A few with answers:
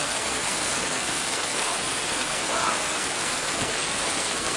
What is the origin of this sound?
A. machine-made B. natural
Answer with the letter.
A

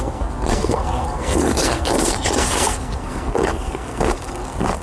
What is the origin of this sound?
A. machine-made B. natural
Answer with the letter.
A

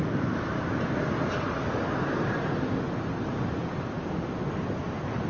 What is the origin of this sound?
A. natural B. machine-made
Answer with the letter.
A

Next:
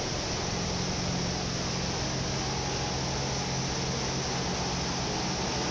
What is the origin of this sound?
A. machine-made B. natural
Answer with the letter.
B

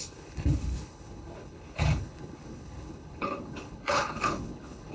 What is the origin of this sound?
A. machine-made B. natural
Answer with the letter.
A